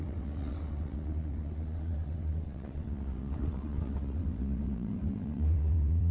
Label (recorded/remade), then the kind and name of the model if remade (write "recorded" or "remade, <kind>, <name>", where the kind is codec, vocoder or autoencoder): remade, vocoder, WaveNeXt